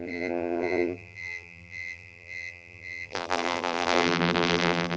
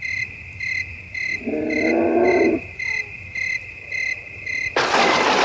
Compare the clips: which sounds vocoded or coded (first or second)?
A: first